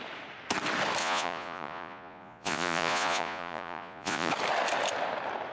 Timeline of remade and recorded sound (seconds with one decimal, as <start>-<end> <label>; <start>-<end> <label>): 0.0-1.0 recorded; 1.0-4.3 remade; 4.3-5.5 recorded